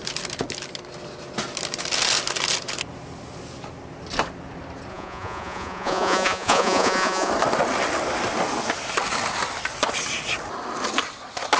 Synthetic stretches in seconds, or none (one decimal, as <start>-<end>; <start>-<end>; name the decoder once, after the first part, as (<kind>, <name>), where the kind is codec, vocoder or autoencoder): 4.9-7.3 (vocoder, Vocos)